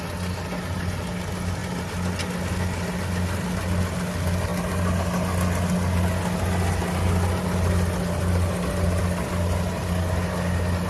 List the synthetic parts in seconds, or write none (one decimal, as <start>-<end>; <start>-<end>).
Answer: none